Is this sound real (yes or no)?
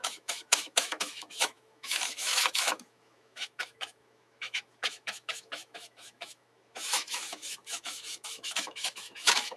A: no